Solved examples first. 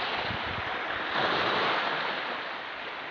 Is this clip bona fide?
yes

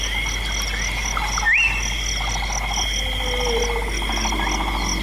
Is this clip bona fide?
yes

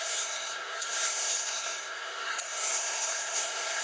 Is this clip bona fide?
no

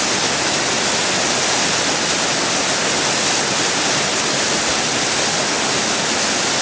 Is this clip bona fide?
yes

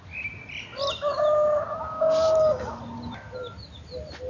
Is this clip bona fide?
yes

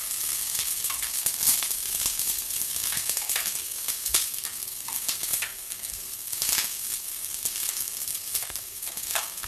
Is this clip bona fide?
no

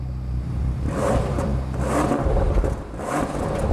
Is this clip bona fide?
no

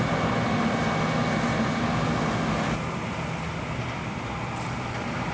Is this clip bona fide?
yes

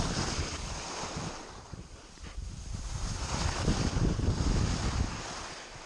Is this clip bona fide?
yes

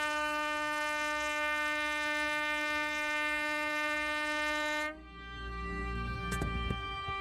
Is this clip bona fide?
no